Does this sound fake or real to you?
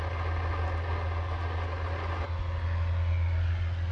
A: real